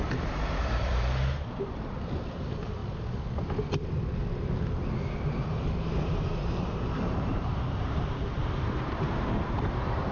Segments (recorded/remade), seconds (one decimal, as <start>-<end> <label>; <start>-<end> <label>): 0.0-2.8 remade; 2.8-5.4 recorded; 5.4-10.1 remade